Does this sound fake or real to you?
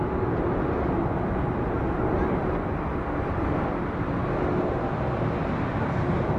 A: real